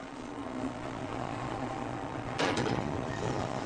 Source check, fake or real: fake